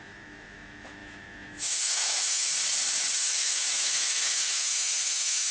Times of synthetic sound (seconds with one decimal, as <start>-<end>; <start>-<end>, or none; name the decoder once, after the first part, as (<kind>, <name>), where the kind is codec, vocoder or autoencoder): 0.0-2.5 (autoencoder, DAC-VAE); 3.1-5.5